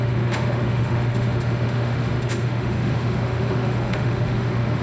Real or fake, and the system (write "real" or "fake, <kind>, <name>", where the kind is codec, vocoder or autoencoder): fake, autoencoder, DAC-VAE